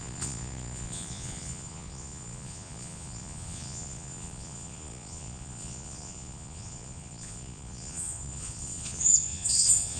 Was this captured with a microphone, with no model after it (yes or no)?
no